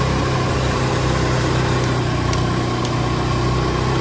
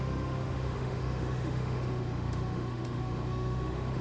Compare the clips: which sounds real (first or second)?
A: first